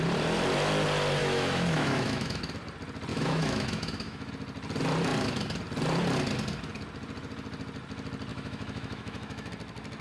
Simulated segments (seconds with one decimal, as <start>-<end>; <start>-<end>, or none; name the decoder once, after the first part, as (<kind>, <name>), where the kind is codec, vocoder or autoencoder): 1.2-2.4 (autoencoder, DAC-VAE); 3.1-4.3; 8.3-9.5